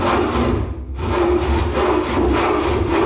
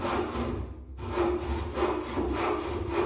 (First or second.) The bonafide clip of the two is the second